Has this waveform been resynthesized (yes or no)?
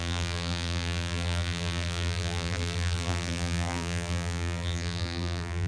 yes